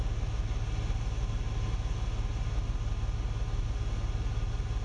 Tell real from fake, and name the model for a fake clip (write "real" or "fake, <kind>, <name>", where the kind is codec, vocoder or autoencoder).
real